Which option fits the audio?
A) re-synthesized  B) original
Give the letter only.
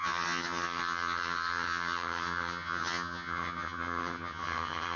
A